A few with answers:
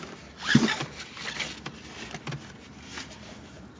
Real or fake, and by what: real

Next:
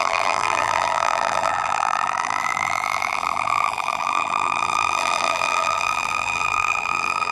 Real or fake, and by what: fake, vocoder, BigVGAN v2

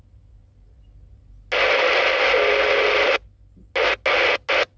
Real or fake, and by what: real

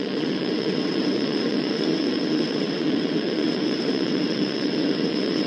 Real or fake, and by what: fake, vocoder, WaveNeXt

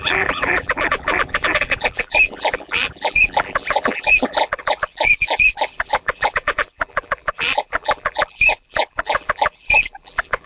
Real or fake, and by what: fake, vocoder, BigVGAN v2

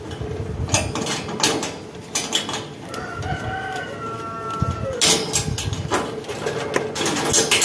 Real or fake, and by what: real